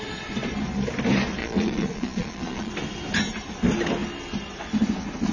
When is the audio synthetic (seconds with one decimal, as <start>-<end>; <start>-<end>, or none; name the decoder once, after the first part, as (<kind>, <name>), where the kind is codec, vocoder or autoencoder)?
1.4-2.7 (vocoder, Vocos)